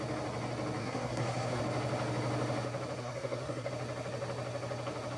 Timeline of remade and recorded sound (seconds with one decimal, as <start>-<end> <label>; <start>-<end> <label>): 0.0-0.8 recorded; 0.8-1.6 remade; 1.6-3.0 recorded; 3.0-3.7 remade; 3.7-5.2 recorded